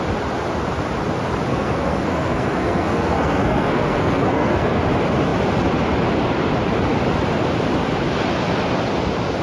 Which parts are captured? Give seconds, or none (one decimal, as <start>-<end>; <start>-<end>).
0.0-1.5; 4.8-9.4